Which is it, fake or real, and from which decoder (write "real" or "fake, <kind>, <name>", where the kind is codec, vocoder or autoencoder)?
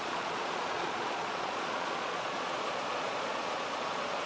fake, vocoder, Vocos